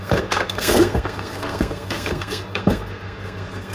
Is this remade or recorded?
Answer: remade